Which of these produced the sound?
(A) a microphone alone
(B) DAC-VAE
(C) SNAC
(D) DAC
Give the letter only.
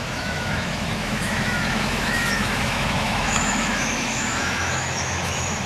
B